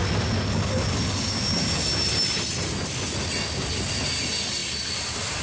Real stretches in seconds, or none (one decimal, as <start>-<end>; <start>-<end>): 0.0-4.6